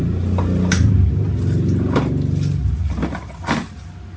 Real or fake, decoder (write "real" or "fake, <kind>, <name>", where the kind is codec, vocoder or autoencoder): real